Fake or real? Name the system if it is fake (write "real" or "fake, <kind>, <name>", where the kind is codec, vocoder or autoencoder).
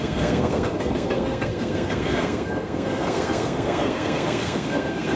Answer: fake, codec, SNAC